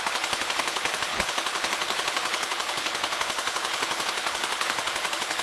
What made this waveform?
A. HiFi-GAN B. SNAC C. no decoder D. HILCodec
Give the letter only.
D